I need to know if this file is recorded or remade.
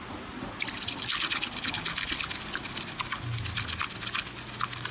recorded